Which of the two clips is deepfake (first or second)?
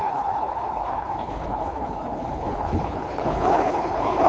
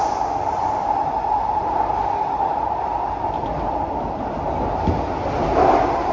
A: first